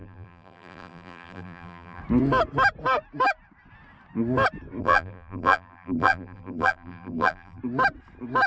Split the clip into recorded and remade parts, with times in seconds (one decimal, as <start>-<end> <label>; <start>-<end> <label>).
0.0-2.0 remade; 2.0-4.8 recorded; 4.8-7.6 remade; 7.6-8.5 recorded